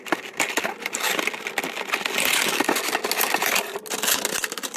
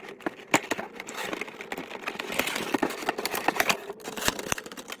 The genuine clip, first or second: first